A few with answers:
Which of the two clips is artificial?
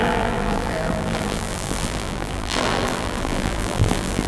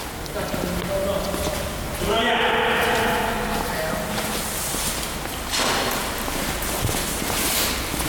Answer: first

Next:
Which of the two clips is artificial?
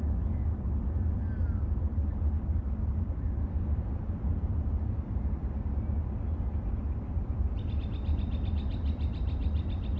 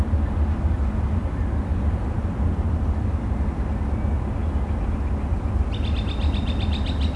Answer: first